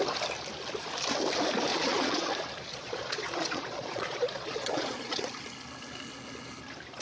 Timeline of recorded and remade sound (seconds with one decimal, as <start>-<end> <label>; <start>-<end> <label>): 0.0-1.7 recorded; 1.7-2.3 remade; 2.3-2.7 recorded; 2.7-5.2 remade; 5.2-7.0 recorded